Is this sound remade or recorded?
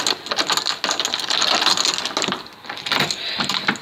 recorded